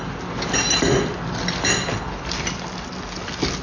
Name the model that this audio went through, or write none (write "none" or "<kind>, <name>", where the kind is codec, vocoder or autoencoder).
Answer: none